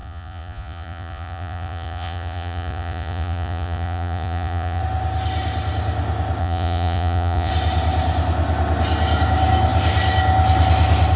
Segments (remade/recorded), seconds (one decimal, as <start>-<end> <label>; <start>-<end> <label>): 0.0-4.8 remade; 4.8-6.4 recorded; 6.4-7.5 remade; 7.5-11.2 recorded

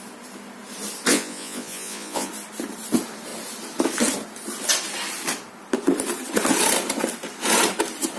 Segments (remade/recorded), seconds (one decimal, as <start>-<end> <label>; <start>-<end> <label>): 0.0-1.1 recorded; 1.1-2.3 remade; 2.3-8.2 recorded

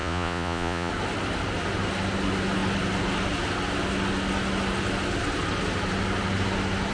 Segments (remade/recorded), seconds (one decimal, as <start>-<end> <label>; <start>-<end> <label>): 0.0-0.9 remade; 0.9-6.9 recorded

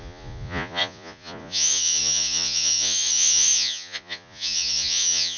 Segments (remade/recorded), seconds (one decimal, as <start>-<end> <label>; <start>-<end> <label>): 0.0-5.4 remade

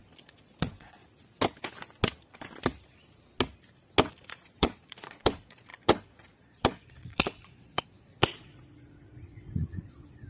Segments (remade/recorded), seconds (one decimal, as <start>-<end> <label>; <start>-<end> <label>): 0.0-1.0 remade; 1.0-4.1 recorded; 4.1-10.3 remade

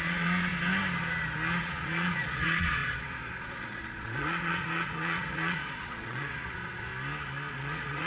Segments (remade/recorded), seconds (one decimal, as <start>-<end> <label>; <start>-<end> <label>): 0.0-0.5 remade; 0.5-1.6 recorded; 1.6-6.9 remade; 6.9-7.5 recorded; 7.5-8.1 remade

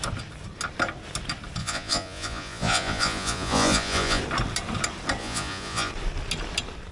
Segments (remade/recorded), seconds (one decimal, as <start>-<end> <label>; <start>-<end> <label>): 0.0-1.6 recorded; 1.6-4.2 remade; 4.2-5.2 recorded; 5.2-5.9 remade; 5.9-6.9 recorded

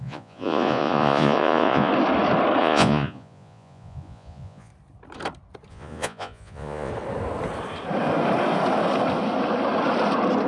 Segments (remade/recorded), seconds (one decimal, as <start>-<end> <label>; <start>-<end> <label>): 0.0-1.9 remade; 1.9-2.6 recorded; 2.6-4.7 remade; 4.7-5.7 recorded; 5.7-6.9 remade; 6.9-10.5 recorded